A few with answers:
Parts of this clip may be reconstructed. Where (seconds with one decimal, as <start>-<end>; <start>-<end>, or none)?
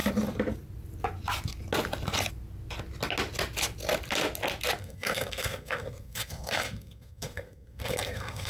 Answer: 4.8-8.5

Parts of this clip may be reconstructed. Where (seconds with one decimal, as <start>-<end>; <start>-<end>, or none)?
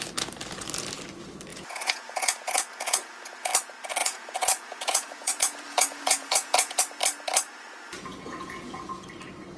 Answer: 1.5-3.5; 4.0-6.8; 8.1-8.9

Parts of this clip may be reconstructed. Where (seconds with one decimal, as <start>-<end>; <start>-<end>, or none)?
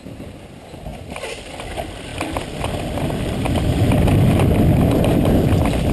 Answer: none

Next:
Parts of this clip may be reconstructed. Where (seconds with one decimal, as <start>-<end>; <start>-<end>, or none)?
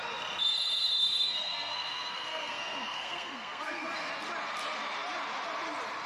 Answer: 0.4-4.1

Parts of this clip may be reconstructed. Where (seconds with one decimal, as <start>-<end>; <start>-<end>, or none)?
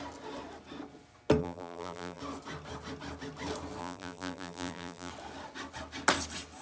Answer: 1.4-2.2; 3.8-5.1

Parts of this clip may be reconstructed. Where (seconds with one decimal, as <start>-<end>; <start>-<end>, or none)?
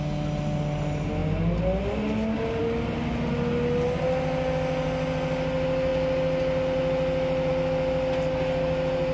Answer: none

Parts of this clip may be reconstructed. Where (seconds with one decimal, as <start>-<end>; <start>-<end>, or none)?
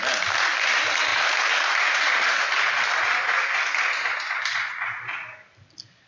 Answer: none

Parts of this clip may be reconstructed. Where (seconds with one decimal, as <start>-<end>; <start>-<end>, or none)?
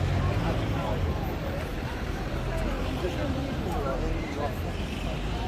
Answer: 1.7-2.3